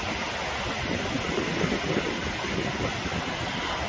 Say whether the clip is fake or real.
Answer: real